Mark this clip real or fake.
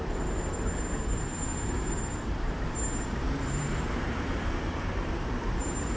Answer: fake